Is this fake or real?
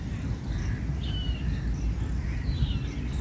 real